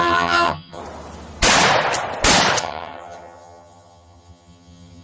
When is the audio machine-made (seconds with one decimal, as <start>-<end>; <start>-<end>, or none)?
0.0-0.8; 2.6-5.0